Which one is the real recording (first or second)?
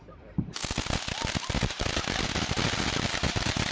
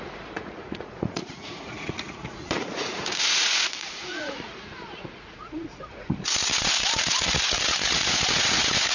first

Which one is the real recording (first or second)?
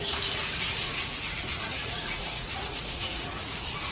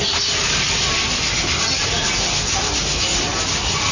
second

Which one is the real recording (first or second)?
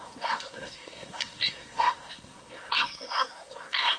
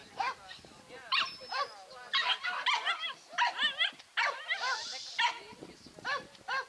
second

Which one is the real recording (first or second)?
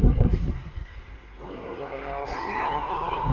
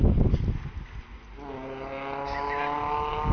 second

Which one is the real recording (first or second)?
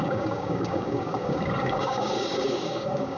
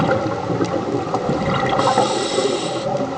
second